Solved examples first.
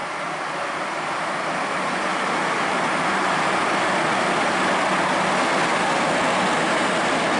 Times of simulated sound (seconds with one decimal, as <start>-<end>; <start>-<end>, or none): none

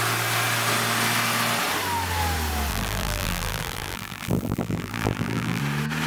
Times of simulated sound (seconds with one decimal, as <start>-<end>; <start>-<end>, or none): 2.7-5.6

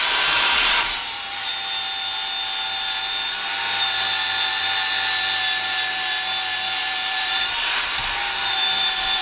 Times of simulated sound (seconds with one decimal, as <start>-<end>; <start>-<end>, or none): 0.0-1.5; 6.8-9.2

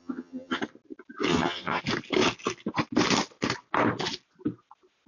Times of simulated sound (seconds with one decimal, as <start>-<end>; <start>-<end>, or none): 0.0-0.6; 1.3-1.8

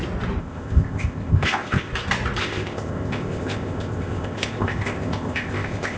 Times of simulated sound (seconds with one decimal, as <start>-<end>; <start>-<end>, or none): 0.4-1.9; 2.4-6.0

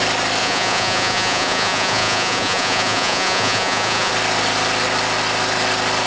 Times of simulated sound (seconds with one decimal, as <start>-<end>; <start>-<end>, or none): 0.4-4.1

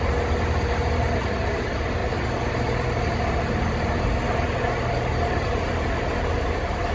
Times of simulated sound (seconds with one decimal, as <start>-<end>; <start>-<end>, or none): none